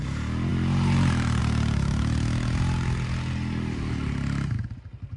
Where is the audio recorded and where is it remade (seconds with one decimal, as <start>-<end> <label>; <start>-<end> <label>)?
0.0-5.2 recorded